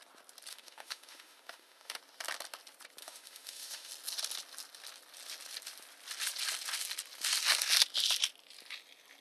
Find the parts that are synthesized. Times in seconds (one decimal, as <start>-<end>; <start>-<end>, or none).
0.5-2.0; 3.0-3.9

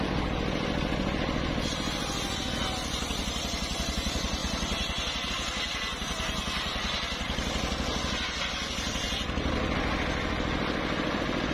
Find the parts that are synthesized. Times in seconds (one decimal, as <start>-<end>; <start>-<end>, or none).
none

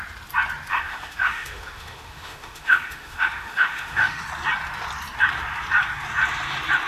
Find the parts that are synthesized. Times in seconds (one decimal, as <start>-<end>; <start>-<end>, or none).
0.7-4.2

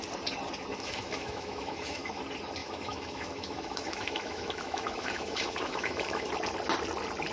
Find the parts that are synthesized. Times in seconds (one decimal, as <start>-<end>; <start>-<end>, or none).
0.7-2.2; 2.6-6.3

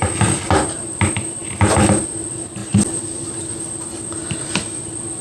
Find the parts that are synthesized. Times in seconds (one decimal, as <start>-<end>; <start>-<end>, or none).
none

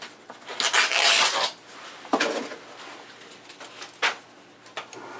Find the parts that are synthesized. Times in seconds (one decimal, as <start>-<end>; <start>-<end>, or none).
none

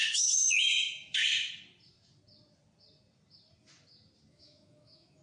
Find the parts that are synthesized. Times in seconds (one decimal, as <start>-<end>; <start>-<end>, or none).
0.0-1.2; 4.3-5.2

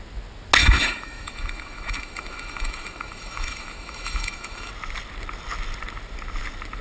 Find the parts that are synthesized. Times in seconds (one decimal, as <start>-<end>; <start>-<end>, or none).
0.6-4.7